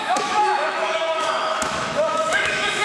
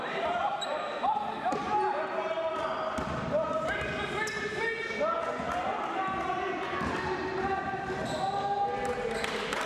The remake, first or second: first